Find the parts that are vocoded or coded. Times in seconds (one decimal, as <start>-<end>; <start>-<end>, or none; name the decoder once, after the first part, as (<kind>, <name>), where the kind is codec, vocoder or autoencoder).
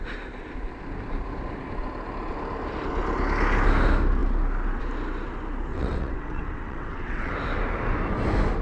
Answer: 5.7-7.3 (vocoder, WaveNeXt)